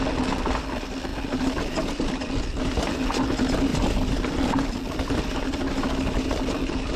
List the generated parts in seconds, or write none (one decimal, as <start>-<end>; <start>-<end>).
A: 1.1-2.3; 3.7-6.5

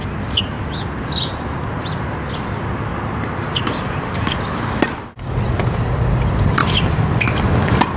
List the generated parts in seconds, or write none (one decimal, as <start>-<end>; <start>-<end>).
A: none

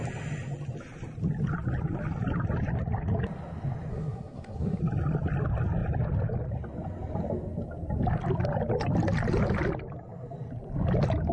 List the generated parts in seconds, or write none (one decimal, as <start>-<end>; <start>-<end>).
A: 3.9-4.8

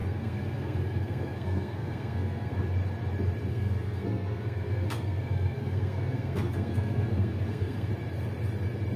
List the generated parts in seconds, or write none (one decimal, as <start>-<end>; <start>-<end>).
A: 0.0-2.6; 3.5-7.9

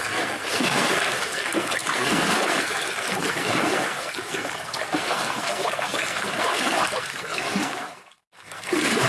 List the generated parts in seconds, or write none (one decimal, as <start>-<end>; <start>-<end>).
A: 0.0-9.1

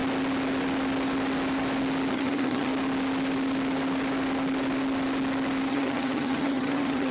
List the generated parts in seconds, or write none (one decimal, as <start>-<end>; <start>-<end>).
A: 2.1-2.7; 5.7-7.1

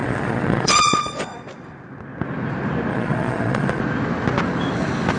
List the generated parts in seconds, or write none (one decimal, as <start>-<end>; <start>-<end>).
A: 0.0-1.3; 2.9-3.8

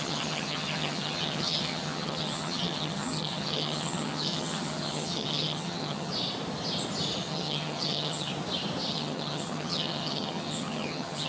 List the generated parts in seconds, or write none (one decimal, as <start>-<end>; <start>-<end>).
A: 0.0-6.1; 7.2-8.3; 8.9-11.3